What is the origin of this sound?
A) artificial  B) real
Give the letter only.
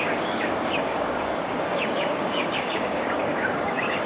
A